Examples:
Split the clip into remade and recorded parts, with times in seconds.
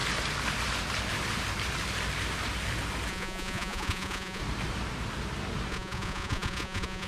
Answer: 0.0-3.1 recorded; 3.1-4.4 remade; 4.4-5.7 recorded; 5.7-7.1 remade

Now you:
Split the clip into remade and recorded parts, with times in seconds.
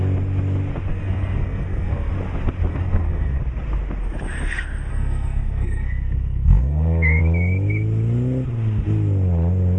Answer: 0.0-0.9 recorded; 0.9-2.1 remade; 2.1-2.7 recorded; 2.7-3.4 remade; 3.4-4.9 recorded; 4.9-7.2 remade; 7.2-9.8 recorded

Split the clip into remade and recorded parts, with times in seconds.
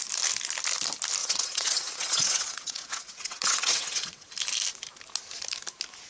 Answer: 0.0-1.2 recorded; 1.2-4.3 remade; 4.3-6.1 recorded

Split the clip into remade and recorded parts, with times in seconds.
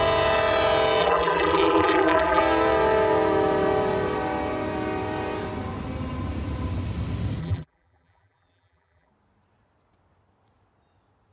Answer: 0.0-1.0 recorded; 1.0-2.4 remade; 2.4-7.4 recorded; 7.4-9.1 remade; 9.1-11.3 recorded